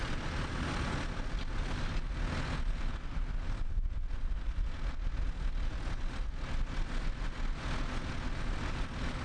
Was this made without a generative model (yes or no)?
yes